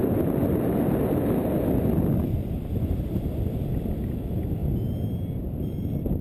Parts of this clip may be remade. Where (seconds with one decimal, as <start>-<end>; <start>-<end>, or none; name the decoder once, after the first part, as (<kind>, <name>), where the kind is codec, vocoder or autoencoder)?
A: none